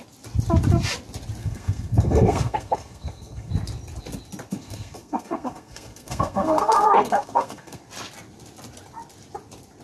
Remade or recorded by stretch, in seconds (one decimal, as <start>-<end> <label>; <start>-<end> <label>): 0.0-1.4 recorded; 1.4-3.5 remade; 3.5-4.5 recorded; 4.5-7.8 remade; 7.8-9.8 recorded